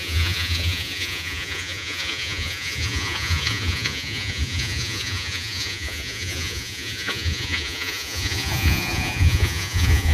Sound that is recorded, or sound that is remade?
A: remade